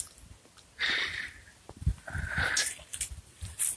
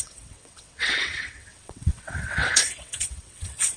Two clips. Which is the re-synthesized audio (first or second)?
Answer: second